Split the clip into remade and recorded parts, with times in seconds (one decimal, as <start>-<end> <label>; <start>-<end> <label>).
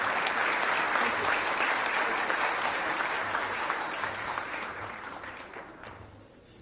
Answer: 0.0-2.7 recorded; 2.7-5.5 remade; 5.5-6.6 recorded